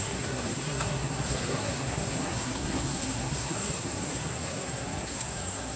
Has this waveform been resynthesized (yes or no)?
yes